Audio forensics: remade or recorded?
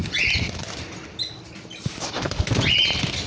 recorded